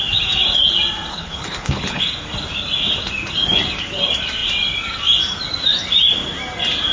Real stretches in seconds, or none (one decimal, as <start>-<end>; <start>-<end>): 0.0-1.1; 2.0-6.9